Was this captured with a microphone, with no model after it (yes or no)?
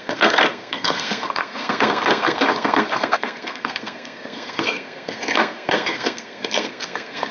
no